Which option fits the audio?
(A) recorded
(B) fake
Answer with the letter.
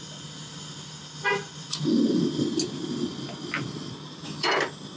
A